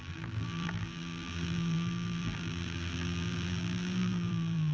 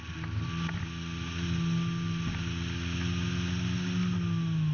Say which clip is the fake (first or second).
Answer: first